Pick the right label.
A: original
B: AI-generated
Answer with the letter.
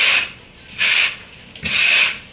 A